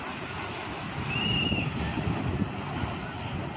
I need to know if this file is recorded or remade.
recorded